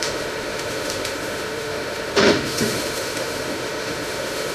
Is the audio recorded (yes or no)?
no